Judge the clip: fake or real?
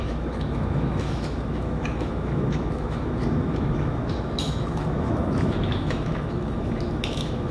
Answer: fake